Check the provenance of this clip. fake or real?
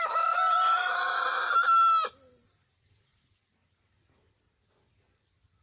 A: real